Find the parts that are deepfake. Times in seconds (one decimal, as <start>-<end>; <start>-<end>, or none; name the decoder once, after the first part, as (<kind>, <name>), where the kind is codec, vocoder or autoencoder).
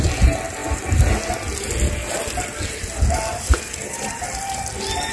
3.3-4.1 (vocoder, BigVGAN v2)